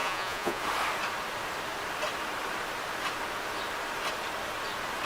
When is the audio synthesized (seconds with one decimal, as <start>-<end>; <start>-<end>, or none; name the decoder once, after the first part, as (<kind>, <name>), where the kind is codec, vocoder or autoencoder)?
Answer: 0.0-0.6 (vocoder, Vocos)